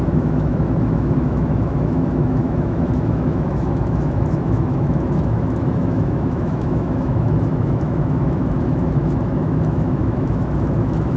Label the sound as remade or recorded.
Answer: remade